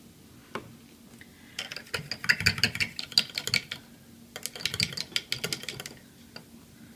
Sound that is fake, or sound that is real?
real